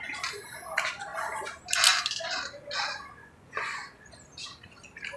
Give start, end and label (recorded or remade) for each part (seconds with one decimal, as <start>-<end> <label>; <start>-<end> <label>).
0.0-3.2 recorded; 3.2-4.1 remade; 4.1-5.2 recorded